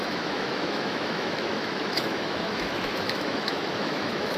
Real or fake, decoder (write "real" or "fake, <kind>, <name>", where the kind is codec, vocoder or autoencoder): fake, autoencoder, DAC-VAE